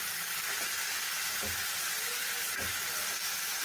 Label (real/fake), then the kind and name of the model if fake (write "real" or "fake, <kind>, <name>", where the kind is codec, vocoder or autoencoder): real